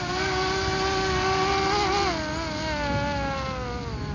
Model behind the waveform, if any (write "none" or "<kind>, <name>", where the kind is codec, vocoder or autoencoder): none